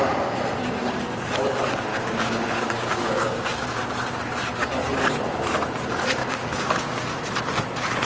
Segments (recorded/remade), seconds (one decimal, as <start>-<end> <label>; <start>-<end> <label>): 0.0-1.9 recorded; 1.9-3.8 remade; 3.8-6.2 recorded; 6.2-7.2 remade; 7.2-8.0 recorded